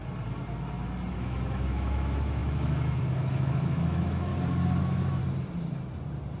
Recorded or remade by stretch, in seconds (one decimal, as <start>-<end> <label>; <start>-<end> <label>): 0.0-1.1 recorded; 1.1-4.3 remade; 4.3-4.8 recorded; 4.8-5.2 remade; 5.2-6.4 recorded